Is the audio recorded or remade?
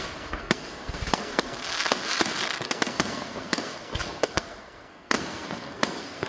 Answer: remade